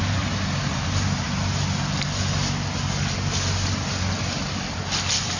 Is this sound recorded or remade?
recorded